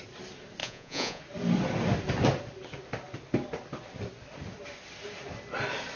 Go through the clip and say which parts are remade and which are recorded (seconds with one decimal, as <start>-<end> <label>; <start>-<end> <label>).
0.0-0.6 recorded; 0.6-1.2 remade; 1.2-6.0 recorded